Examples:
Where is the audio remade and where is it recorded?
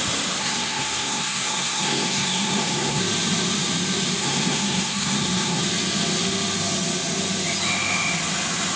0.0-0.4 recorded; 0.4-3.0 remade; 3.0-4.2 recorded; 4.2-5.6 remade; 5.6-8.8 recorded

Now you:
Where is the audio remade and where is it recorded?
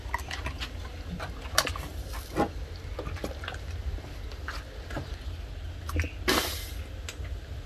0.0-1.9 recorded; 1.9-3.0 remade; 3.0-7.7 recorded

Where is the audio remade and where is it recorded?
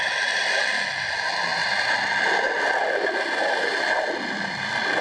0.0-5.0 recorded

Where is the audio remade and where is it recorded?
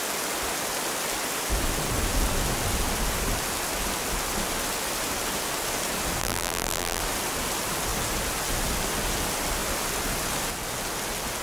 0.0-6.2 recorded; 6.2-7.0 remade; 7.0-11.4 recorded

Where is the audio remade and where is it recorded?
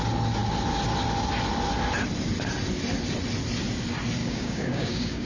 0.0-4.2 recorded; 4.2-5.3 remade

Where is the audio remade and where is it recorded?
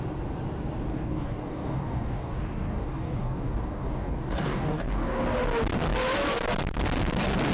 0.0-0.9 recorded; 0.9-5.2 remade; 5.2-7.5 recorded